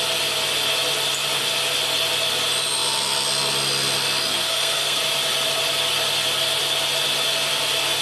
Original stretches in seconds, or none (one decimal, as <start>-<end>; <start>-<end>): 0.0-4.3; 5.0-8.0